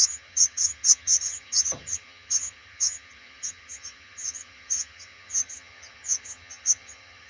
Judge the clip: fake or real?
fake